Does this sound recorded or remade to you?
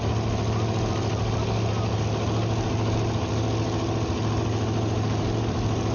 recorded